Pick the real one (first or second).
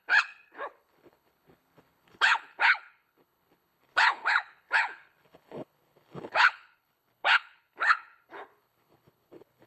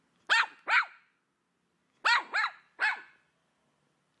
second